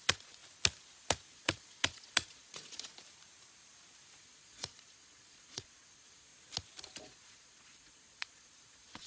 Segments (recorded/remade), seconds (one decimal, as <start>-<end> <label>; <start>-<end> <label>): 0.0-0.4 remade; 0.4-1.3 recorded; 1.3-2.9 remade; 2.9-4.2 recorded; 4.2-6.3 remade; 6.3-7.0 recorded; 7.0-9.1 remade